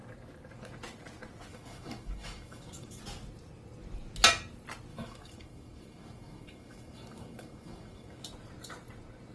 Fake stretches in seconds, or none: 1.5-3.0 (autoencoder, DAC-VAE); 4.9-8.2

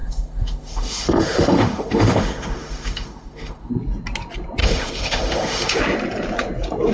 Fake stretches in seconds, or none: 0.0-3.7 (autoencoder, DAC-VAE); 4.6-5.8

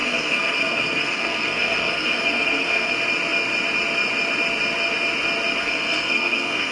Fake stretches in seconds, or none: 0.0-2.9 (codec, SNAC); 5.6-6.7

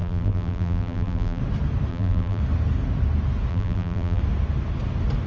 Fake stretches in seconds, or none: 0.0-1.4 (vocoder, BigVGAN v2); 1.9-2.4; 3.5-4.2

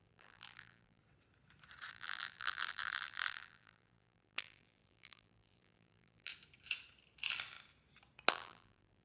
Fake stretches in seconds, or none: 0.0-1.0 (vocoder, BigVGAN v2); 1.9-6.3; 8.3-9.0

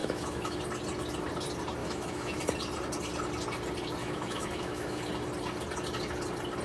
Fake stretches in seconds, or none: 0.0-0.6 (autoencoder, DAC-VAE); 1.8-2.4; 4.0-5.0